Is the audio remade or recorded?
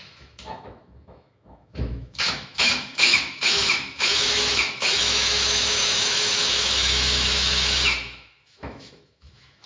remade